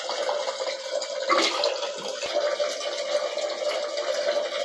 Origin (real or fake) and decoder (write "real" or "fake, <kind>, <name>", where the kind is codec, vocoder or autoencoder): real